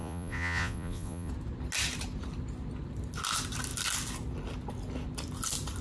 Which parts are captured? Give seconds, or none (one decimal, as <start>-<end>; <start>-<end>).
1.3-5.8